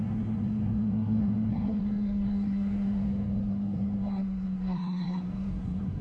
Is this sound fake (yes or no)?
yes